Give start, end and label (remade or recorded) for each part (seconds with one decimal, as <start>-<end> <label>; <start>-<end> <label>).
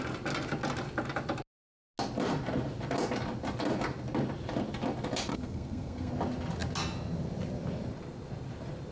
0.0-5.3 recorded; 5.3-6.1 remade; 6.1-8.9 recorded